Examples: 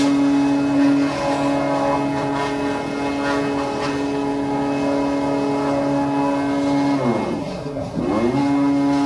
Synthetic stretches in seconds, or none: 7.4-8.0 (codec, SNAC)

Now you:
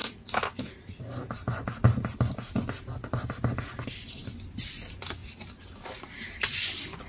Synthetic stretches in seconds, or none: none

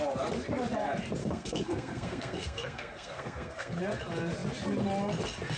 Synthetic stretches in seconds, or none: 1.2-3.8 (codec, SNAC)

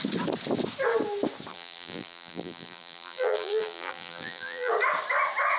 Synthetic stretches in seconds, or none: 1.5-4.7 (vocoder, BigVGAN v2)